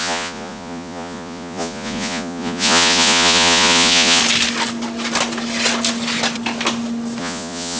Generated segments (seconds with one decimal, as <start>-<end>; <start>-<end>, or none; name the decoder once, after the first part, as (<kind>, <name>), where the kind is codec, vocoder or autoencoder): 0.0-4.2 (vocoder, Vocos); 7.2-7.8

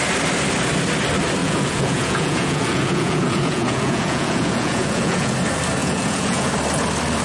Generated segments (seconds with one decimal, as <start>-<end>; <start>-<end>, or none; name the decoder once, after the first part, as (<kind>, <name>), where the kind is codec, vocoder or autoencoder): 1.4-5.3 (vocoder, Vocos); 5.8-6.5

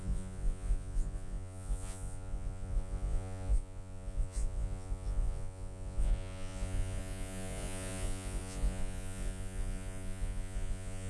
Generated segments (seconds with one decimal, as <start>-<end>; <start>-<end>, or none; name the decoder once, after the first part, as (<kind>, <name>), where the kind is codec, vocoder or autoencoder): 0.0-11.1 (vocoder, Vocos)

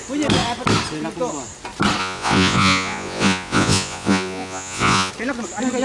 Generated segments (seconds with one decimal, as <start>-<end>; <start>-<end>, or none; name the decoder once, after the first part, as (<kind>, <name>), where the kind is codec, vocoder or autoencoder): 2.0-5.1 (vocoder, Vocos)

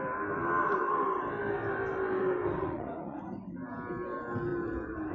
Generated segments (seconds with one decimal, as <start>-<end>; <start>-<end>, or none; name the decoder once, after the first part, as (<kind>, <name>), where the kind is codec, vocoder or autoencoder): 2.6-3.2 (vocoder, Vocos)

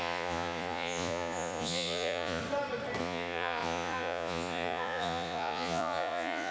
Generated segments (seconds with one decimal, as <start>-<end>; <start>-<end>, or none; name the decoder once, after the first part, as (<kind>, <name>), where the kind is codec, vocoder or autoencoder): 0.0-2.4 (vocoder, Vocos); 3.0-6.5